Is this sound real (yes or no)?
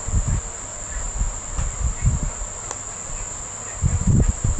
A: yes